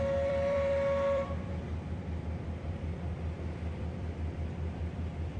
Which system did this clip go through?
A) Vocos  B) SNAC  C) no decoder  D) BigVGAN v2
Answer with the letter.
D